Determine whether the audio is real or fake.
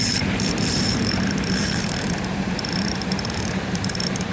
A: fake